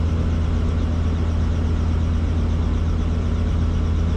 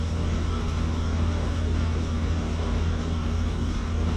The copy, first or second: second